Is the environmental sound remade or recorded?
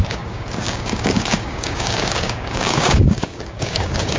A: remade